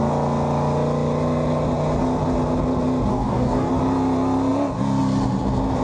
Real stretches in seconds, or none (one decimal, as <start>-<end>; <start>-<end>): 0.0-3.1; 3.7-5.8